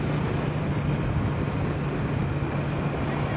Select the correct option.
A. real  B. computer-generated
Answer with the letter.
A